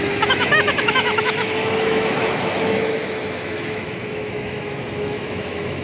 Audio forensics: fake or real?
fake